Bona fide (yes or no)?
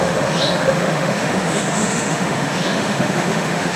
no